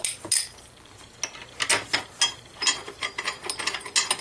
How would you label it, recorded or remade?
recorded